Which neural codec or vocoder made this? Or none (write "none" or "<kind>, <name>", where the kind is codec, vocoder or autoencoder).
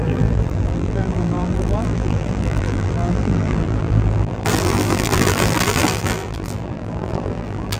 vocoder, BigVGAN v2